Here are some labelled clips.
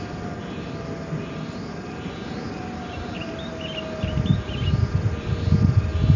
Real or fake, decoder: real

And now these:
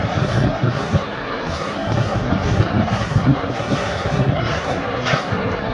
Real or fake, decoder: fake, codec, SNAC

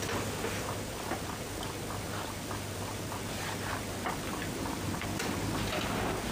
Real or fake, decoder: real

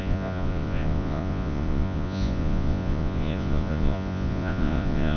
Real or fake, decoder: fake, vocoder, Vocos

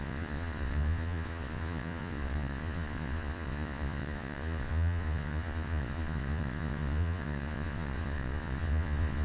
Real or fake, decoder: fake, vocoder, Vocos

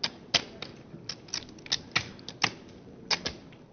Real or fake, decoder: real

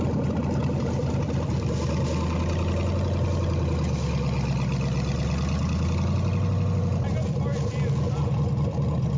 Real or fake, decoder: real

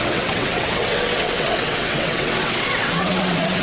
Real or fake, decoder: fake, vocoder, WaveNeXt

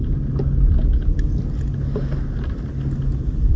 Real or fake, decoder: real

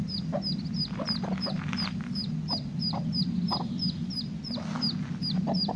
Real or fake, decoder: real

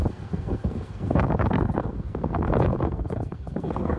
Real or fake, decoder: fake, codec, SNAC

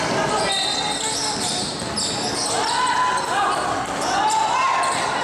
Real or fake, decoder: real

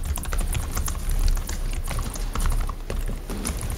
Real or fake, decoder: real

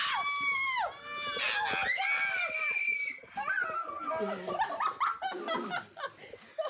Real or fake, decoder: real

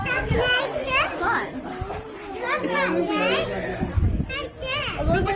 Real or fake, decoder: real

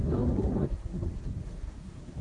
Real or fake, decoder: fake, codec, SNAC